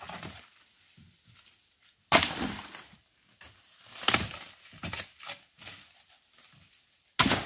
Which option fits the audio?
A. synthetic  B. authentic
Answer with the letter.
B